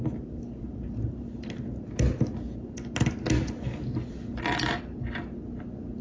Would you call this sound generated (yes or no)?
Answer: no